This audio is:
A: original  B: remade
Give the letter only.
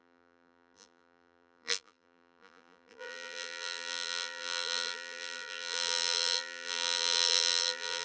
B